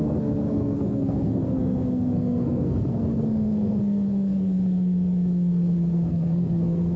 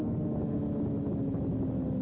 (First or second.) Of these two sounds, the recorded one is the second